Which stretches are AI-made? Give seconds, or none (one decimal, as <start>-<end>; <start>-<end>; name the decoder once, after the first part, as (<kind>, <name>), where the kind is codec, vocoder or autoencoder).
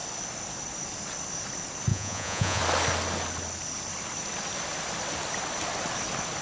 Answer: 1.9-2.6 (vocoder, Vocos)